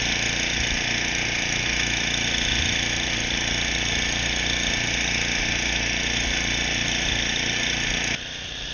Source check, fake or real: real